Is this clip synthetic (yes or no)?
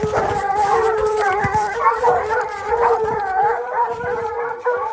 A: yes